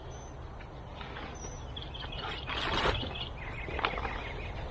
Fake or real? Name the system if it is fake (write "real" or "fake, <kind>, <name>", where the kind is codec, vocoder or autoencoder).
real